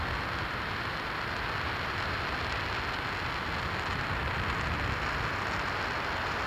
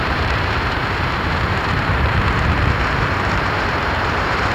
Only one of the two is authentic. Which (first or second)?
first